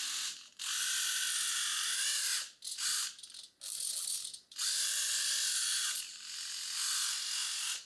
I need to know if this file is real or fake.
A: real